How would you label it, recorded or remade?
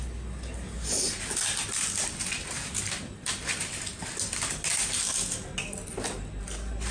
recorded